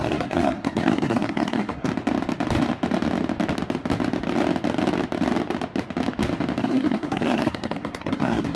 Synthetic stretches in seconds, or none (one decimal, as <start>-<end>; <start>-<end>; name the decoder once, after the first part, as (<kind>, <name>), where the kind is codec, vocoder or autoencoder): 0.0-1.9 (codec, SNAC); 6.6-8.6